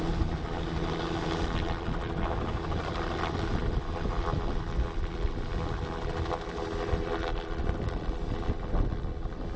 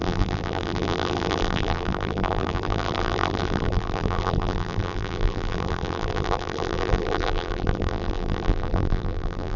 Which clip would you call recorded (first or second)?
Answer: first